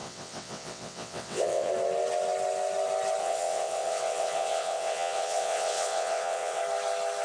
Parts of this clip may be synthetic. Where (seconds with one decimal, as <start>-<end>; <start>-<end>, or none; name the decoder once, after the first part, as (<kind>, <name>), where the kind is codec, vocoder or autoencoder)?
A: 0.0-1.7 (vocoder, WaveNeXt); 3.2-6.6